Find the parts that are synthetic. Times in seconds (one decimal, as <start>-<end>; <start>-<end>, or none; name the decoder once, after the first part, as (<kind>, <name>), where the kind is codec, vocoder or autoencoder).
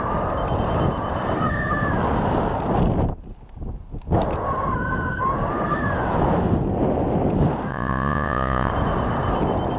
7.7-8.7 (vocoder, Vocos)